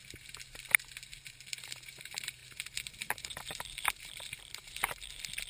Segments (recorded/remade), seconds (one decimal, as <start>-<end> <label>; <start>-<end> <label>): 0.0-1.6 recorded; 1.6-5.5 remade